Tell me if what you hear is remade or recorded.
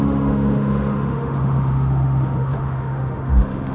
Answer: remade